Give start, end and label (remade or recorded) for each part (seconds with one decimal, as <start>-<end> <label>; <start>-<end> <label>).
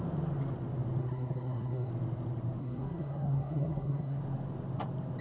0.0-1.0 recorded; 1.0-1.9 remade; 1.9-2.6 recorded; 2.6-4.2 remade; 4.2-5.2 recorded